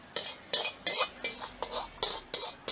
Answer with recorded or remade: recorded